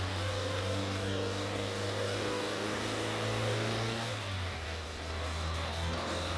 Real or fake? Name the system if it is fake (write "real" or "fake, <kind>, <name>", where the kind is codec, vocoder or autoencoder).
fake, codec, DAC